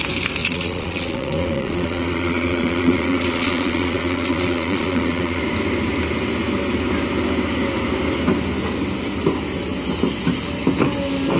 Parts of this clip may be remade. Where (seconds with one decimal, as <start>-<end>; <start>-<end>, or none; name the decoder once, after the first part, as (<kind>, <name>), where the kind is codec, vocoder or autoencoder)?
0.4-5.4 (vocoder, Vocos)